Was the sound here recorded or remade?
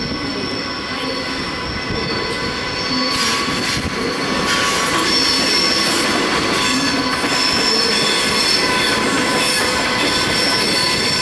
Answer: recorded